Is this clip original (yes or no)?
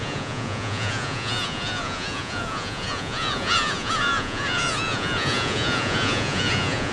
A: no